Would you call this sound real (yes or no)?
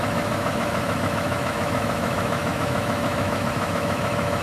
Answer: no